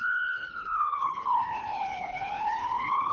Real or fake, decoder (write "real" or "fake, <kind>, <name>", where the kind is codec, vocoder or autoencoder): fake, codec, HILCodec